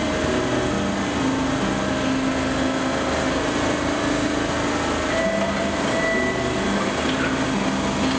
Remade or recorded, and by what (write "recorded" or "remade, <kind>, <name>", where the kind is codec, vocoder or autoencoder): recorded